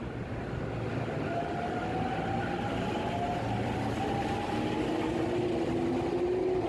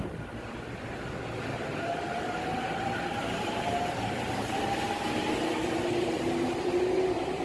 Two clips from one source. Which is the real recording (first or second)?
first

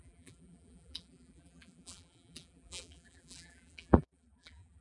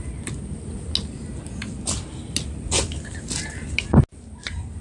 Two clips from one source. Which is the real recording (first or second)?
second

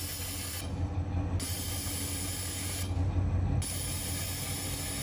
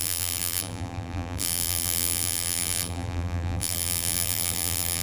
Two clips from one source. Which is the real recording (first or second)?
first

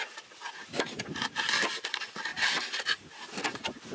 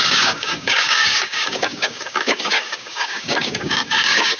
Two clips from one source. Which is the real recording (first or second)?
first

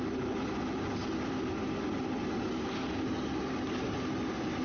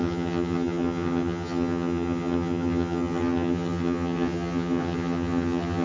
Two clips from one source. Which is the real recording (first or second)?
first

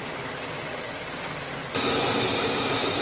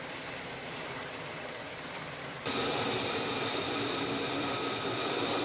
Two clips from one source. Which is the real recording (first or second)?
first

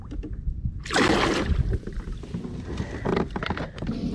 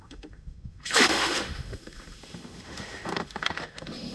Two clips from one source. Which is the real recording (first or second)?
first